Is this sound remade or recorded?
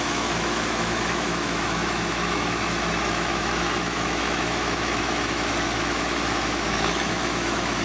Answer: remade